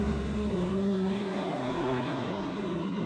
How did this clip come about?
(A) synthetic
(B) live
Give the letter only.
A